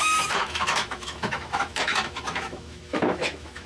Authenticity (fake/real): fake